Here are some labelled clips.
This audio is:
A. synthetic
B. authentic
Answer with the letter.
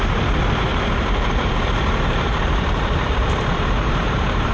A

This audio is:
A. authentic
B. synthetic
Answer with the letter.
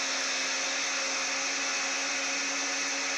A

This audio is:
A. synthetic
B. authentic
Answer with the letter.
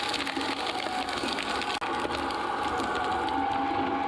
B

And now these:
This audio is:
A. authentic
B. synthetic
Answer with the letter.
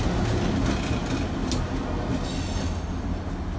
A